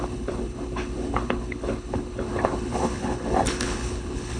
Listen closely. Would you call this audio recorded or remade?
remade